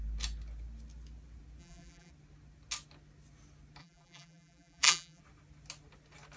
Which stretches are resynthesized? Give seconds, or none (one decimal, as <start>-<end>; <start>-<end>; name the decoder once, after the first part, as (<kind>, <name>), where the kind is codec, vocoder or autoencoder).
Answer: 1.6-2.1 (vocoder, BigVGAN v2); 3.8-5.2

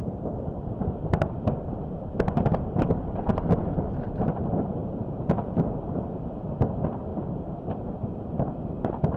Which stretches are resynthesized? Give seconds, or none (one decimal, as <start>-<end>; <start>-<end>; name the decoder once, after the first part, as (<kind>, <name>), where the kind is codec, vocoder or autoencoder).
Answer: 4.8-6.1 (vocoder, BigVGAN v2)

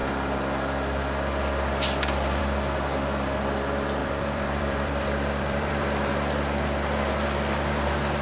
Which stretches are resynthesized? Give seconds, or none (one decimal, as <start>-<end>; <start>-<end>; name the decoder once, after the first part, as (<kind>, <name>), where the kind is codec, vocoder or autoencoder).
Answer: 4.0-6.1 (vocoder, BigVGAN v2)

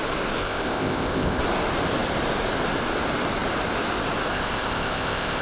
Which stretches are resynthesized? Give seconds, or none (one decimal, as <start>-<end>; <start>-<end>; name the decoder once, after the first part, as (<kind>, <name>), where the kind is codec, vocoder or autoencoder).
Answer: 0.4-1.4 (codec, ZipCodec); 4.3-5.4

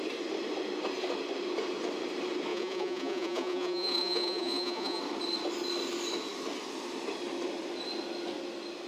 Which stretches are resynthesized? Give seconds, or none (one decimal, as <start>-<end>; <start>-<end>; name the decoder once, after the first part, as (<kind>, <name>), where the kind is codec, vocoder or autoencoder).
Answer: 2.5-5.0 (vocoder, Vocos)